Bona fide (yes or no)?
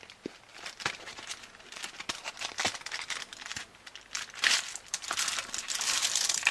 yes